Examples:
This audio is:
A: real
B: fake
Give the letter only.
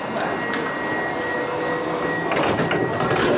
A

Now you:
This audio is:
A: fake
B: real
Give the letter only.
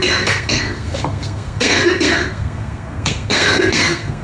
A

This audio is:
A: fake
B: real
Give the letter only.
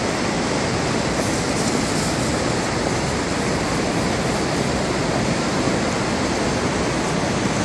B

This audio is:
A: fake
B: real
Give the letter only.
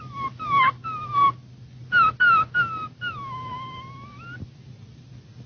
B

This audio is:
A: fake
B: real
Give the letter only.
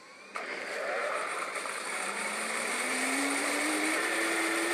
A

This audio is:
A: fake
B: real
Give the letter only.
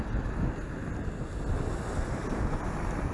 B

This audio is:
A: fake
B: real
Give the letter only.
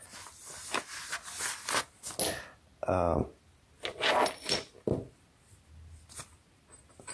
B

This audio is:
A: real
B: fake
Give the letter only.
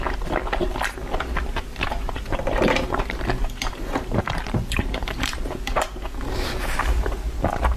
A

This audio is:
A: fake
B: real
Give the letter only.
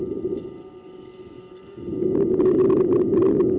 B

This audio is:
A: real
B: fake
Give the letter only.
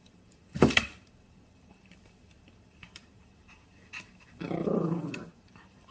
B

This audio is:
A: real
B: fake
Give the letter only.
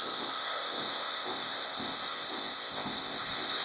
B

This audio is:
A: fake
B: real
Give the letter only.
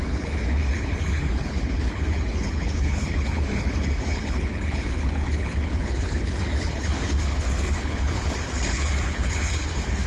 A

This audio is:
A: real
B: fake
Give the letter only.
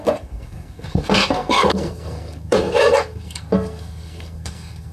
B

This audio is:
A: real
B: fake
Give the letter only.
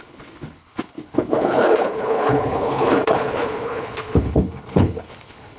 B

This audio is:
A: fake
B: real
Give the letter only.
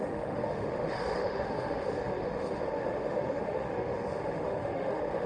A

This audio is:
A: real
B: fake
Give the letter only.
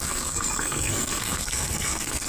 B